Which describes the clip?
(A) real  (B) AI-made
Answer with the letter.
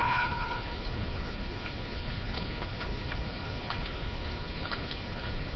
B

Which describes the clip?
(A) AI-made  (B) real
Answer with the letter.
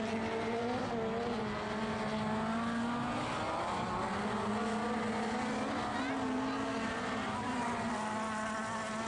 B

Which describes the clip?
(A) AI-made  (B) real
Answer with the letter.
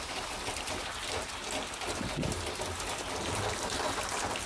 B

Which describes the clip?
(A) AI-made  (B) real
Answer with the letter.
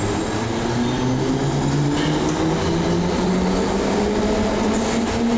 B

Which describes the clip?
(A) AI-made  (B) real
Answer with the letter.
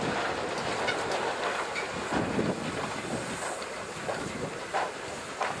B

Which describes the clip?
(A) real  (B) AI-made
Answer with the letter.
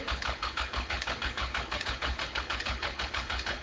B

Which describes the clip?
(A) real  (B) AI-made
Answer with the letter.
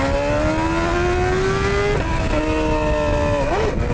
A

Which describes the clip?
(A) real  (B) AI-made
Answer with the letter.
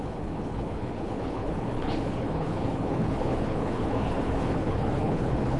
B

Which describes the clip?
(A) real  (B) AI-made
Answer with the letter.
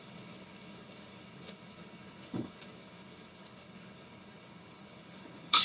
B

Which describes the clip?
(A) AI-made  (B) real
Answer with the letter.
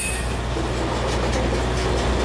B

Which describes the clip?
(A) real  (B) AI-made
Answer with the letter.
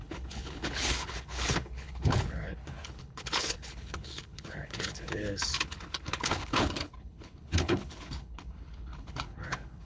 B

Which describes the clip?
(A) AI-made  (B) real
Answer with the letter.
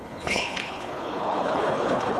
A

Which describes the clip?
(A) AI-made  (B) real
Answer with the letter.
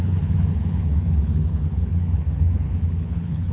A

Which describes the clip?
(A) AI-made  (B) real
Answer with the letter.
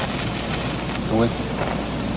B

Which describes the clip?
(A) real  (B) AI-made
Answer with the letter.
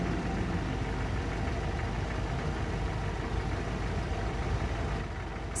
A